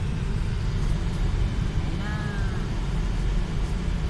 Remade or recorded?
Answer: recorded